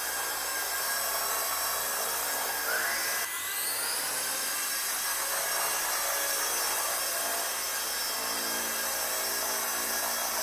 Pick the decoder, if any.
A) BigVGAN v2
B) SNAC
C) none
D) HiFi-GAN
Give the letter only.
C